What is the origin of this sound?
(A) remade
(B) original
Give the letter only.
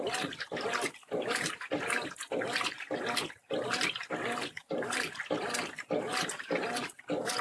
B